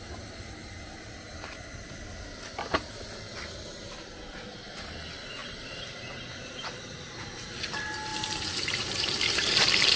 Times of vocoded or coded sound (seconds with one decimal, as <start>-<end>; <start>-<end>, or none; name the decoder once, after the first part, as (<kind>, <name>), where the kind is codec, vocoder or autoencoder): 5.4-6.3 (vocoder, BigVGAN v2); 8.1-9.5